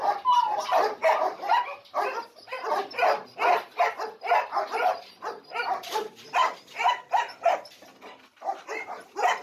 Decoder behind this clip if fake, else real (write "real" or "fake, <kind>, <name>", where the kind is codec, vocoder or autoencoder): real